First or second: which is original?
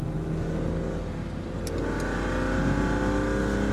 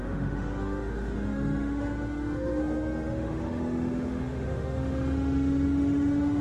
first